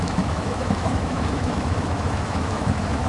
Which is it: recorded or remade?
remade